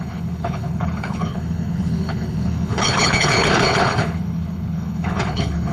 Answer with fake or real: fake